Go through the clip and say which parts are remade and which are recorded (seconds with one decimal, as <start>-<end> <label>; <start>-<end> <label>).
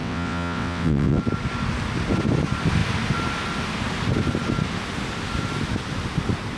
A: 0.0-1.2 remade; 1.2-6.6 recorded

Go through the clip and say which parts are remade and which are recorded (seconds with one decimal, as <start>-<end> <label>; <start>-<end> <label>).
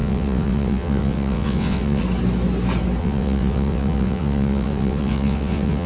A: 0.0-2.0 remade; 2.0-3.0 recorded; 3.0-5.9 remade